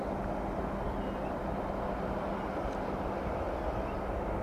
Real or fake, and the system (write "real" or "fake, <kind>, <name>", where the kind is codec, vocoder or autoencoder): real